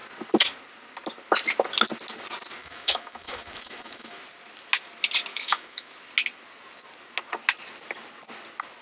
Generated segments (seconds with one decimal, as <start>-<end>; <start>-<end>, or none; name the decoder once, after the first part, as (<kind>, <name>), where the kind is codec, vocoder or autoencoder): 2.6-4.2 (autoencoder, DAC-VAE); 5.3-5.9